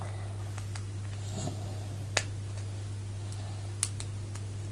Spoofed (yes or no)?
no